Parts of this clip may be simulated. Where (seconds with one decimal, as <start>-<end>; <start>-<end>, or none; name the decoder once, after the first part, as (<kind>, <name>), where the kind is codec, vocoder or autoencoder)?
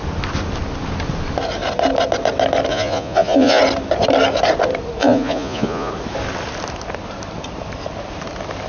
2.7-3.6 (vocoder, Vocos); 5.0-5.9